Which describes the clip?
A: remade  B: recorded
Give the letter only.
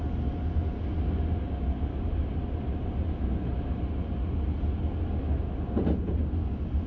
B